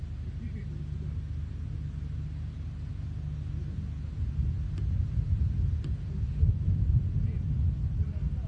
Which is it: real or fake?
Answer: real